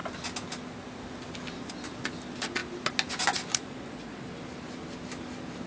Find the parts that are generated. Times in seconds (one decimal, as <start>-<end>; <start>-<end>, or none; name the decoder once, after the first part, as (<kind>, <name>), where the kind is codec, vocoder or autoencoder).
3.5-4.3 (vocoder, Vocos)